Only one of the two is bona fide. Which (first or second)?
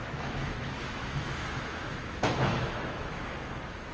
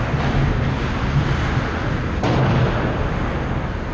second